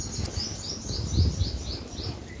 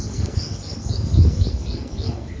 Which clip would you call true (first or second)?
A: first